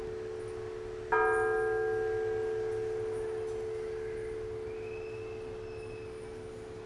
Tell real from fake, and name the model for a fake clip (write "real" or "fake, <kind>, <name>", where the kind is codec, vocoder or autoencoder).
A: real